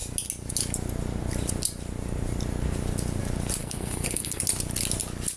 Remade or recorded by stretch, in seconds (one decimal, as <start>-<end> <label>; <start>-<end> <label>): 0.0-3.6 recorded; 3.6-4.4 remade; 4.4-5.4 recorded